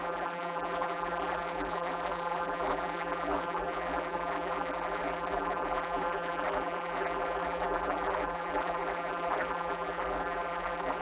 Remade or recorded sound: remade